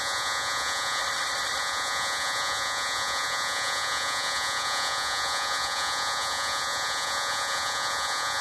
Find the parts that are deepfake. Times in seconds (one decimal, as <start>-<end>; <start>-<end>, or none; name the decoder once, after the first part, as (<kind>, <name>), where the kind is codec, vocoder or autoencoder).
0.0-1.0 (vocoder, Vocos); 1.6-8.4